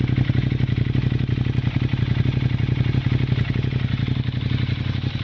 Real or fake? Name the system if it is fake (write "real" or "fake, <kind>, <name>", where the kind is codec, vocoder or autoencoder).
real